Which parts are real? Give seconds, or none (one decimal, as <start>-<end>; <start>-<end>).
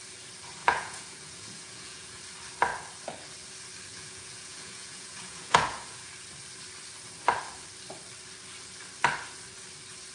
0.0-0.6; 2.2-3.9; 6.1-10.1